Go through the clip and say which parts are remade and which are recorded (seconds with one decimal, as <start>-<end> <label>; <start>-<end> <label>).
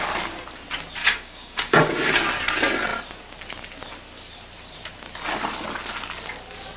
0.0-1.0 recorded; 1.0-2.1 remade; 2.1-6.8 recorded